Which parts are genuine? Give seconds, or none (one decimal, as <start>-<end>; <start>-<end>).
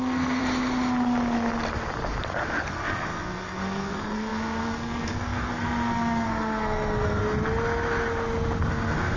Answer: 0.4-2.7; 7.2-8.7